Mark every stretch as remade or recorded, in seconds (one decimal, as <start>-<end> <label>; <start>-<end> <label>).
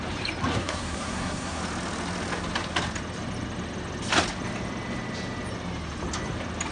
0.0-0.5 recorded; 0.5-1.6 remade; 1.6-6.7 recorded